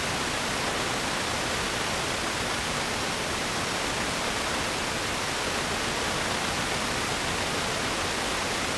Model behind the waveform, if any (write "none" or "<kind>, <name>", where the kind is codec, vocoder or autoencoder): none